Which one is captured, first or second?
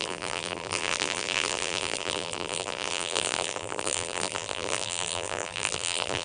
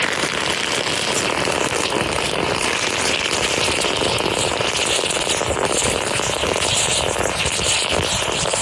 second